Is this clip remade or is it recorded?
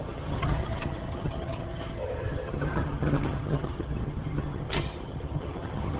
remade